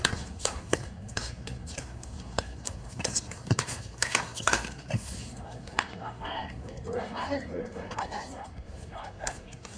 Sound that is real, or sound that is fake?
fake